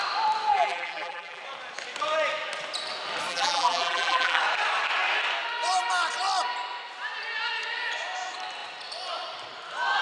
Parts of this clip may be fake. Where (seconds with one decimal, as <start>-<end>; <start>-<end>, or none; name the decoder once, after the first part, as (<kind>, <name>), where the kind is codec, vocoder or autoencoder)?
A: 0.5-1.4 (vocoder, BigVGAN v2); 3.3-4.4